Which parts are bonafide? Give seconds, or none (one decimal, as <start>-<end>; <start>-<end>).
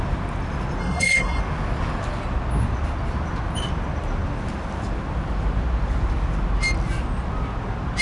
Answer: 0.0-0.8; 1.4-8.0